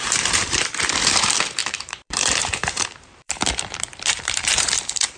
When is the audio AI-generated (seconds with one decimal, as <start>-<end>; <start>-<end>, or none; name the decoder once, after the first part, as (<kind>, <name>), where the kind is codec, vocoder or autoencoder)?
0.0-5.2 (vocoder, BigVGAN v2)